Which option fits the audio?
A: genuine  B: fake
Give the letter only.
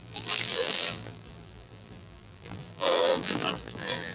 B